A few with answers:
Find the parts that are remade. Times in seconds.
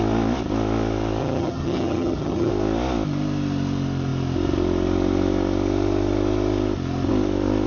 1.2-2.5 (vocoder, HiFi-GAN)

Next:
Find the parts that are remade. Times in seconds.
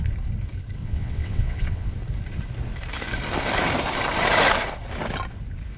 0.8-1.9 (vocoder, WaveNeXt)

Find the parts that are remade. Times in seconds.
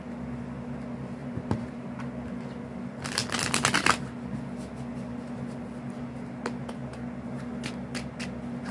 1.2-2.0 (vocoder, BigVGAN v2)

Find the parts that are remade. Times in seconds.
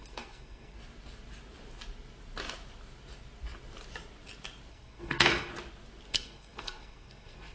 0.0-0.8 (codec, SNAC); 4.7-5.5; 6.1-7.5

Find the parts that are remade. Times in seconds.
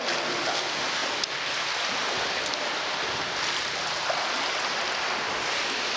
none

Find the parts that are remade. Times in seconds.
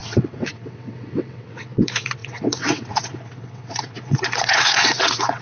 0.0-5.4 (vocoder, WaveNeXt)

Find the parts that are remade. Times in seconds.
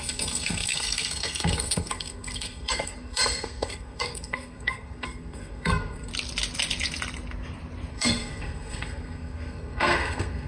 0.0-6.1 (codec, SNAC); 7.9-10.5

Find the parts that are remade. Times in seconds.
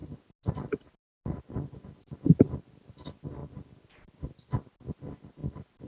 3.4-4.2 (vocoder, BigVGAN v2)